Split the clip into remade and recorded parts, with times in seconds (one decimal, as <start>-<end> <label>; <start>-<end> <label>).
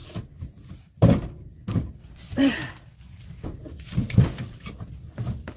0.0-5.6 recorded